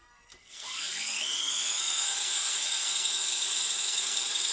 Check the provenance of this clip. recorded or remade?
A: remade